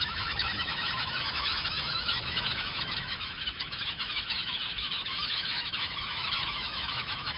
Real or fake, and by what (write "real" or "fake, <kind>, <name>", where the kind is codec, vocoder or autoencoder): fake, autoencoder, DAC-VAE